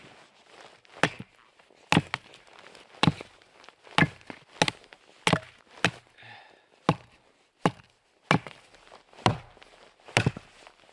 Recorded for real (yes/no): yes